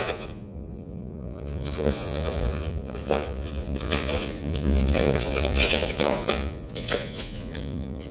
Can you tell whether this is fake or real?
fake